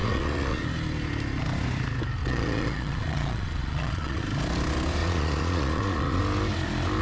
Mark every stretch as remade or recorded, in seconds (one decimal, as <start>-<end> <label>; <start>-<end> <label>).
0.0-0.6 remade; 0.6-2.2 recorded; 2.2-4.2 remade; 4.2-5.0 recorded; 5.0-6.2 remade; 6.2-7.0 recorded